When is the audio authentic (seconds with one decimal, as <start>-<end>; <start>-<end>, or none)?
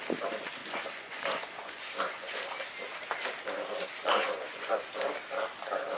0.0-0.6; 2.4-4.0; 4.9-6.0